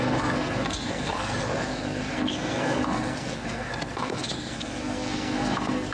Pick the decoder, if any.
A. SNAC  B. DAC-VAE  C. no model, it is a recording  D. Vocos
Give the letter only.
A